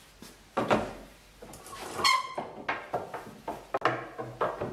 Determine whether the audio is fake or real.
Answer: real